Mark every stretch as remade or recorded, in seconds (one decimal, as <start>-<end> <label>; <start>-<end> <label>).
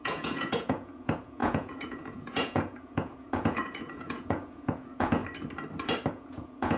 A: 0.0-5.2 remade; 5.2-6.1 recorded; 6.1-6.8 remade